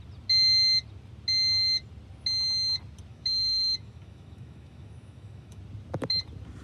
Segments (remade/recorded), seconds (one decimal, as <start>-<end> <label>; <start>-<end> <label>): 0.0-3.1 recorded; 3.1-5.6 remade; 5.6-6.6 recorded